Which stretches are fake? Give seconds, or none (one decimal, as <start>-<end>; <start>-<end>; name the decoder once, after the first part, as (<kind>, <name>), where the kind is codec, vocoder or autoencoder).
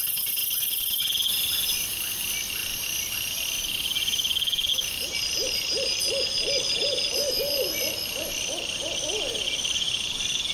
none